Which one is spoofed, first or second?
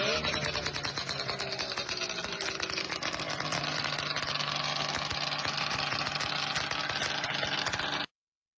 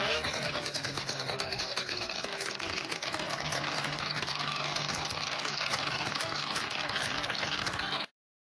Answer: second